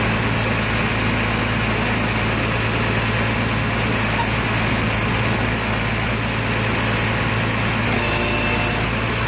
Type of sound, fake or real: real